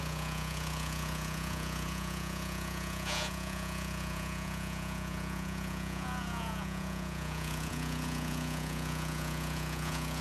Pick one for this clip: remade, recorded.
remade